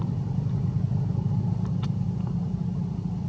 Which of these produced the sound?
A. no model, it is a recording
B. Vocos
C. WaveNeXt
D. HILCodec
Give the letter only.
A